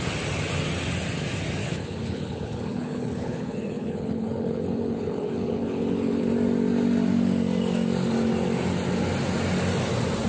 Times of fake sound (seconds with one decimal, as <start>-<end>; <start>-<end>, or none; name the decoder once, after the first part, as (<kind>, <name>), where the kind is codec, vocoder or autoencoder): 1.6-6.3 (codec, HILCodec)